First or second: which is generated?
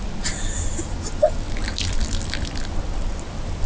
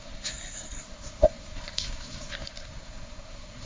second